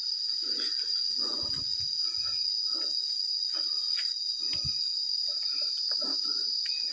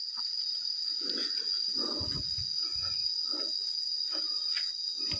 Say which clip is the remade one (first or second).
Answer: second